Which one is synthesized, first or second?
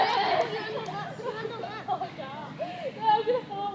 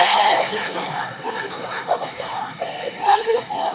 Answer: second